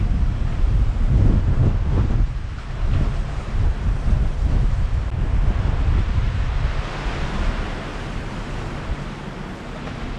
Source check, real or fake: real